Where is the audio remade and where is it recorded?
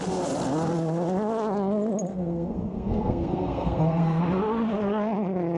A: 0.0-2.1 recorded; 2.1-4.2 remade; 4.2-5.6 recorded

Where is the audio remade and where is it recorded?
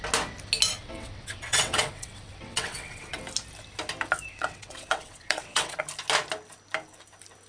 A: 0.0-0.8 recorded; 0.8-3.2 remade; 3.2-4.3 recorded; 4.3-5.8 remade; 5.8-7.5 recorded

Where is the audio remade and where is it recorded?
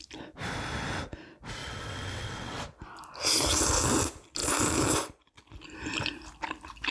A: 0.0-1.6 recorded; 1.6-2.6 remade; 2.6-6.9 recorded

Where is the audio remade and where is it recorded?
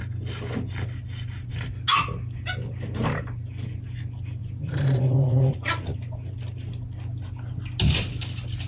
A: 0.0-4.4 recorded; 4.4-5.8 remade; 5.8-8.7 recorded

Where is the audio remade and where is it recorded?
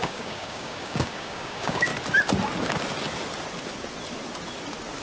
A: 0.0-1.9 remade; 1.9-5.0 recorded